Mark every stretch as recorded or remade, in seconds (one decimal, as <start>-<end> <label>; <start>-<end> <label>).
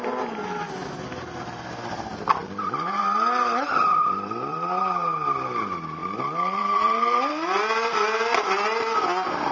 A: 0.0-2.4 recorded; 2.4-4.8 remade; 4.8-6.0 recorded; 6.0-8.8 remade; 8.8-9.5 recorded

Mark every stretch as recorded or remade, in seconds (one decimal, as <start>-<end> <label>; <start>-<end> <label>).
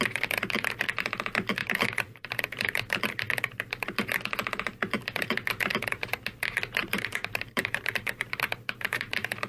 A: 0.0-1.6 recorded; 1.6-3.0 remade; 3.0-5.7 recorded; 5.7-6.2 remade; 6.2-6.8 recorded; 6.8-9.5 remade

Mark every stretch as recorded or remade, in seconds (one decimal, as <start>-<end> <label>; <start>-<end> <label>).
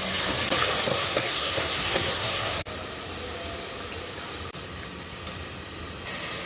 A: 0.0-0.9 recorded; 0.9-2.7 remade; 2.7-6.5 recorded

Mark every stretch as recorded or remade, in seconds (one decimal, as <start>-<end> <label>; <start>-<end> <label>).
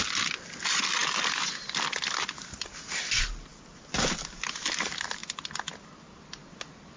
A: 0.0-7.0 recorded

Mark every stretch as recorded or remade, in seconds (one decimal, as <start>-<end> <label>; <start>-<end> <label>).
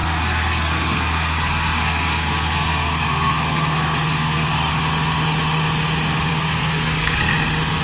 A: 0.0-4.7 remade; 4.7-6.3 recorded; 6.3-7.2 remade; 7.2-7.8 recorded